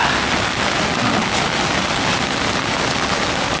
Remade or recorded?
recorded